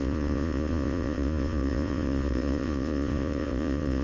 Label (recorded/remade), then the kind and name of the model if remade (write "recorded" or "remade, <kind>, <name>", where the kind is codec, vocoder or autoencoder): remade, vocoder, Vocos